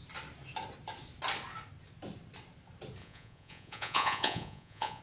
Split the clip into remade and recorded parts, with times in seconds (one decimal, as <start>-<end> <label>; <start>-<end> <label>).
0.0-3.0 recorded; 3.0-5.0 remade